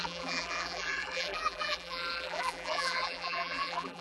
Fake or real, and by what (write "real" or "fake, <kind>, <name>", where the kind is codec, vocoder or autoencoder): fake, vocoder, BigVGAN v2